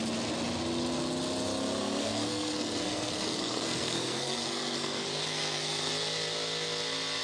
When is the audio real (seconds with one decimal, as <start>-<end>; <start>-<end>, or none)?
0.0-1.8; 5.9-7.2